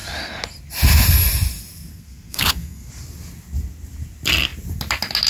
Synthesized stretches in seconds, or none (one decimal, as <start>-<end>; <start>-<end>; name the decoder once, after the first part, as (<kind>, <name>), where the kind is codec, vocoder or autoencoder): 1.9-2.9 (codec, SNAC)